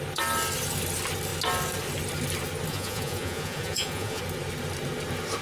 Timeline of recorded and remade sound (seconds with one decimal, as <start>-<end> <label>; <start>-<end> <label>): 0.0-2.7 recorded; 2.7-4.2 remade; 4.2-5.4 recorded